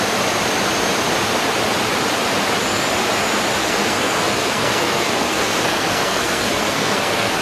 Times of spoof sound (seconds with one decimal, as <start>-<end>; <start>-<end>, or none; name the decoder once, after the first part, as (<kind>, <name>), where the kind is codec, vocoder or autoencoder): 3.6-7.4 (codec, SNAC)